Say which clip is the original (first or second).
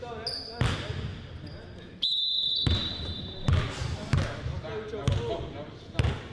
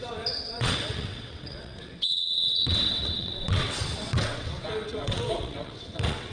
first